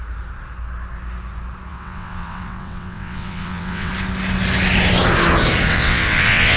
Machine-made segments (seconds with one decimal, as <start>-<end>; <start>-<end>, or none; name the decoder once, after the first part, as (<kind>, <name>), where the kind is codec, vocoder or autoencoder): 1.7-3.9 (vocoder, WaveNeXt); 5.7-6.6